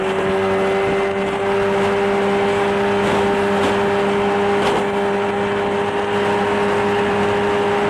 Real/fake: real